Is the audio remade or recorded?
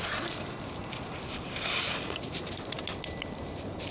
recorded